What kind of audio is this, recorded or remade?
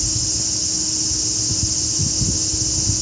recorded